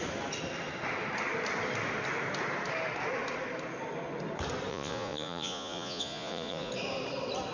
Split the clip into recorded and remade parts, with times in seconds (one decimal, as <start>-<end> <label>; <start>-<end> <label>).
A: 0.0-4.7 recorded; 4.7-6.7 remade; 6.7-7.5 recorded